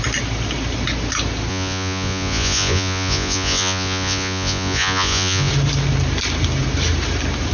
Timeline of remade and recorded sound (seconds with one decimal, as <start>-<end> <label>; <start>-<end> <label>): 0.0-1.5 recorded; 1.5-5.5 remade; 5.5-7.5 recorded